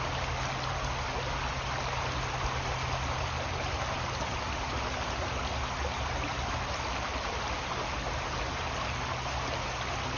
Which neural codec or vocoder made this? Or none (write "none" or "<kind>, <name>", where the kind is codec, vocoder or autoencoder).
none